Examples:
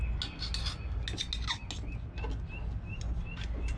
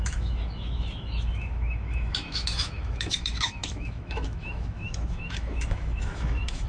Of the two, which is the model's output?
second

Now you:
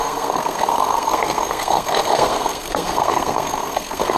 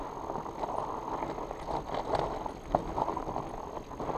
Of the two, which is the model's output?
first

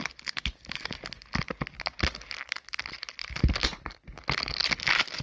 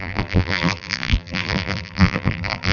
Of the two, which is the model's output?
second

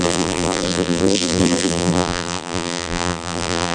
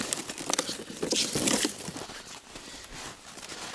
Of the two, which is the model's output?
first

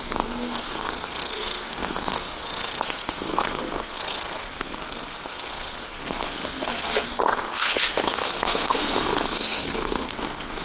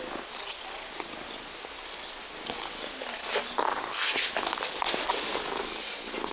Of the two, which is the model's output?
first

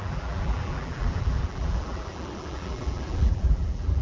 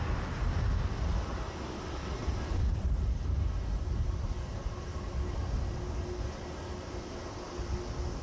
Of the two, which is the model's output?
first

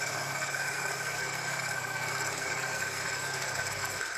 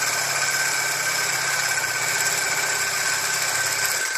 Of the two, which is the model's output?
first